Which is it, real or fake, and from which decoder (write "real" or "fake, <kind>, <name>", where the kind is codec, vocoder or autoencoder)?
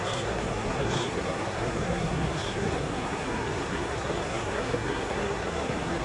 fake, codec, SNAC